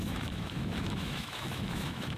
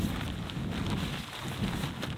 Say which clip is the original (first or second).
second